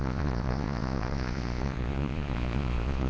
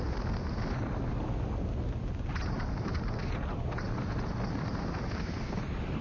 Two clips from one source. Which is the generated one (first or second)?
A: first